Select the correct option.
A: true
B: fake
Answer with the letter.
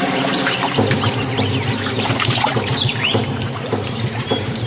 B